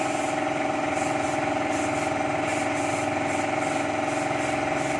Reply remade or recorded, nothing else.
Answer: recorded